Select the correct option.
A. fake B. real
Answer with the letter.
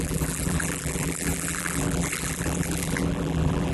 A